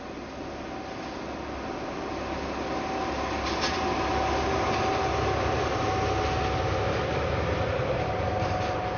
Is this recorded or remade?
recorded